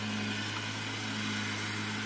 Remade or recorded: recorded